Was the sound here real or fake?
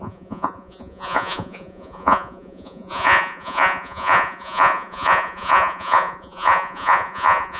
fake